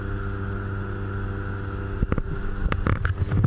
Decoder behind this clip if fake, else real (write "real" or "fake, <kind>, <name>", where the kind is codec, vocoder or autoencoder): real